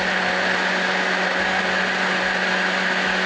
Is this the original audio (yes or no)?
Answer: yes